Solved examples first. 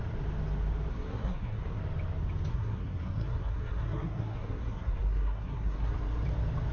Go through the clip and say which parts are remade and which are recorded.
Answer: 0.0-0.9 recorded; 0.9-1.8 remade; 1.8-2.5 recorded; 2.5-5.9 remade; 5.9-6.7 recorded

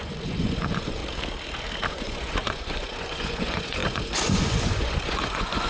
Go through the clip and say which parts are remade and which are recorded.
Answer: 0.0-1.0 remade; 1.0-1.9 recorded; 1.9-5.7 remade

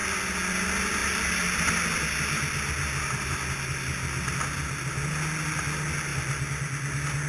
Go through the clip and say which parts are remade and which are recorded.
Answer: 0.0-7.3 recorded